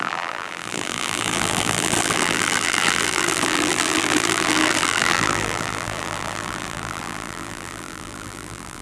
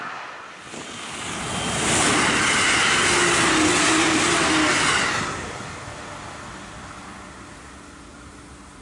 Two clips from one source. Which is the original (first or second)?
second